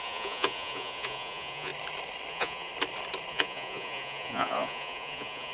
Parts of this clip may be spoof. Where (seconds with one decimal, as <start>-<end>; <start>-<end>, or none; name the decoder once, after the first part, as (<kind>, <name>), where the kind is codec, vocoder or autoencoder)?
0.0-1.7 (vocoder, Vocos); 2.3-2.7; 3.3-5.5